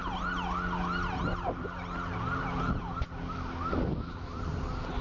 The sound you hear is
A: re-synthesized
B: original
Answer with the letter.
B